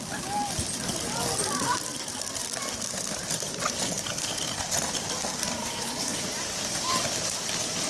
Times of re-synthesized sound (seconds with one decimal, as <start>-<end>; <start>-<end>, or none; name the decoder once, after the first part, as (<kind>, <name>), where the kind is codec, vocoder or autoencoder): 5.6-6.2 (codec, HILCodec)